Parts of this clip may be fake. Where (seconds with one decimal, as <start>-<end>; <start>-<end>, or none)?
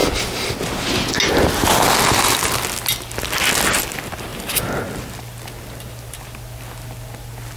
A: none